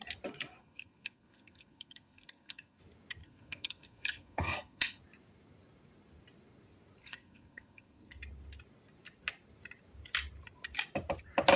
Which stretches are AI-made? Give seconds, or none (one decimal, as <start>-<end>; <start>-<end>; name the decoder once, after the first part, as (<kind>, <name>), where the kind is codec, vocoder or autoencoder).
0.6-2.8 (codec, SNAC); 3.2-5.0; 7.0-8.2

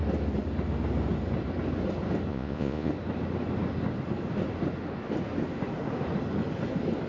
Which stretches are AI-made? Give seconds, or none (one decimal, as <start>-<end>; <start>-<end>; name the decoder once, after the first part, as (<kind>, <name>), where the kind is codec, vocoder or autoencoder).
2.3-2.9 (vocoder, Vocos)

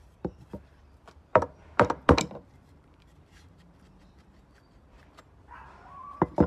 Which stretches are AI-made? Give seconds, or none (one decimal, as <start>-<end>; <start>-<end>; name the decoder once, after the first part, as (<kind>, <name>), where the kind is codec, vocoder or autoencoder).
0.0-0.5 (vocoder, BigVGAN v2); 1.3-5.2

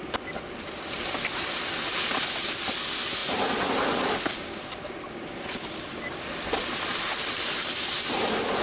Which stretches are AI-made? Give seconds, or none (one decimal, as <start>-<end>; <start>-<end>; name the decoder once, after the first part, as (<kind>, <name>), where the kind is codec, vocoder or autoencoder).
none

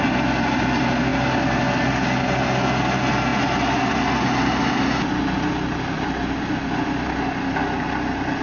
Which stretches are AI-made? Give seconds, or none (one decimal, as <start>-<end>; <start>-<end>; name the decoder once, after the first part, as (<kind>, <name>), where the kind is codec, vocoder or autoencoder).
none

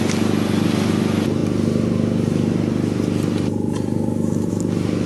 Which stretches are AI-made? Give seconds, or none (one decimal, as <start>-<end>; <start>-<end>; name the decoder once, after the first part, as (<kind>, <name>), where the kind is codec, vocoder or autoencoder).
none

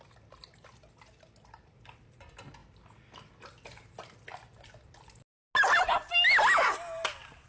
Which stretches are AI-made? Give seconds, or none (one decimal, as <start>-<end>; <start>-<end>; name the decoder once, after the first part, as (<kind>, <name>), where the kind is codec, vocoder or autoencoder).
none